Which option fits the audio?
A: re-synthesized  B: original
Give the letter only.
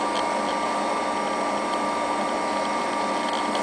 B